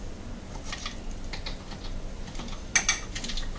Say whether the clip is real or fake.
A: real